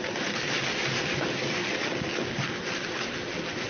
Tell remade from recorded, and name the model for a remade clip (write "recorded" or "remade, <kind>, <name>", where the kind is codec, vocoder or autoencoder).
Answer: recorded